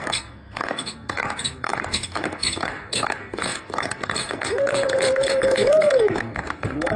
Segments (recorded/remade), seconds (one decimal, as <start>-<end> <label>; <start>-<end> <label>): 0.0-7.0 remade